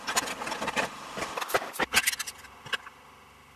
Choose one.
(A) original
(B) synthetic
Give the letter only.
A